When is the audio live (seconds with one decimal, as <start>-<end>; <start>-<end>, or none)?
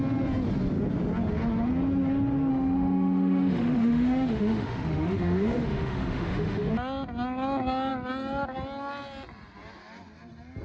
0.0-2.5; 6.7-10.6